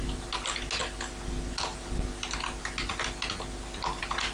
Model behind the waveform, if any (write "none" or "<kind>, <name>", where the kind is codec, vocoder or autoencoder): none